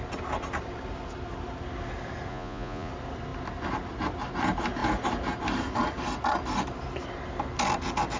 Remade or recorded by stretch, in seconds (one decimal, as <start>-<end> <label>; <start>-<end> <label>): 0.0-2.3 recorded; 2.3-2.9 remade; 2.9-8.2 recorded